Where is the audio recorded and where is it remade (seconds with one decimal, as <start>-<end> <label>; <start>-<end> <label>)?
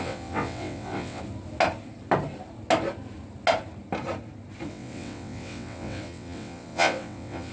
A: 0.0-1.2 remade; 1.2-4.7 recorded; 4.7-7.5 remade